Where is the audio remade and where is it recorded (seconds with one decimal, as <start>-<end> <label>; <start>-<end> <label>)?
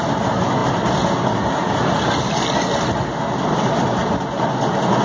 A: 0.0-5.0 recorded